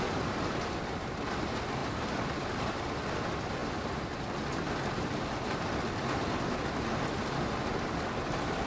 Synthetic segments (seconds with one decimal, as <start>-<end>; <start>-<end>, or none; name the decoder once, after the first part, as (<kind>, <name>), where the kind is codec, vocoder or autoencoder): none